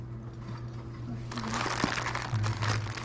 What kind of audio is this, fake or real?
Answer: real